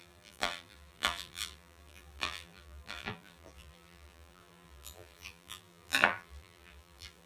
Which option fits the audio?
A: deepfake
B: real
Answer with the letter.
A